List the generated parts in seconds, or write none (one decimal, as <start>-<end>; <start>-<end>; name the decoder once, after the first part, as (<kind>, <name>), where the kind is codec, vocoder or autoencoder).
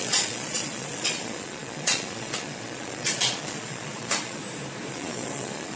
0.0-4.4 (vocoder, Vocos); 4.9-5.8